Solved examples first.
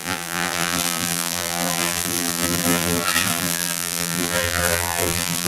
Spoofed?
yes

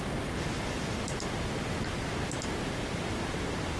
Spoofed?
no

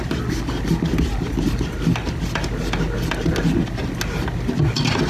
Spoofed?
no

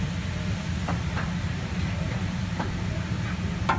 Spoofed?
yes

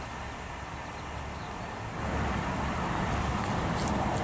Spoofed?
yes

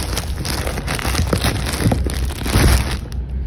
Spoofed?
no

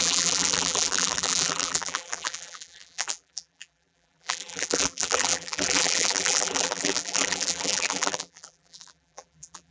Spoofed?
yes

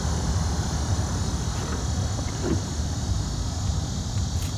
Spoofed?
no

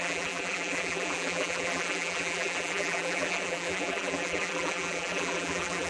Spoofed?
yes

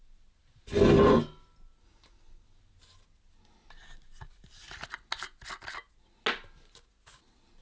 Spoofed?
no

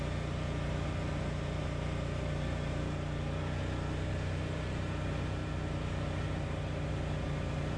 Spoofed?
yes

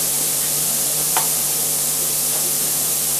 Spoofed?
yes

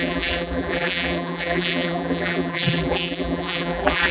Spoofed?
yes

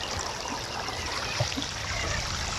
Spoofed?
yes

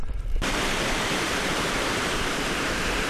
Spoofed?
yes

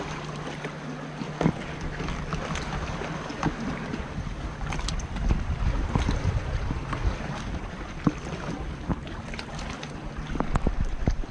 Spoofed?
no